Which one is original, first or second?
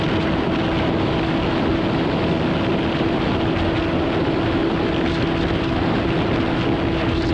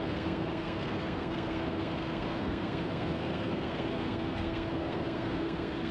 first